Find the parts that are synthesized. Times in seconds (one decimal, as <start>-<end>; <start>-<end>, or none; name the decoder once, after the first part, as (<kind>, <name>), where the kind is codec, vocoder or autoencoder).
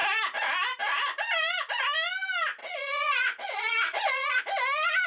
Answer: 2.6-4.4 (vocoder, Vocos)